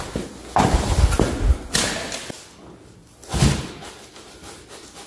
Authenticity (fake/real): real